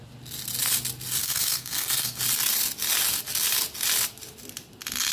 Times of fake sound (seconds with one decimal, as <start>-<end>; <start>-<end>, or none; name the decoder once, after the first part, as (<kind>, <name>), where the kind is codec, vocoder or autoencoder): 1.2-2.2 (codec, SNAC)